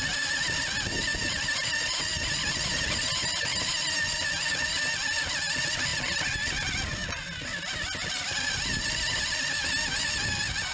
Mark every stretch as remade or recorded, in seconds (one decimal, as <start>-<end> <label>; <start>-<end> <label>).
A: 0.0-2.7 recorded; 2.7-4.0 remade; 4.0-10.7 recorded